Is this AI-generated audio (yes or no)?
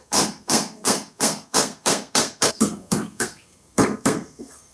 yes